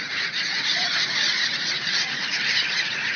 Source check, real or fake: fake